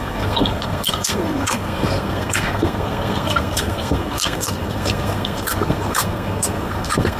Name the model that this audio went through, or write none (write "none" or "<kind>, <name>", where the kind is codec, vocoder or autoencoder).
codec, SNAC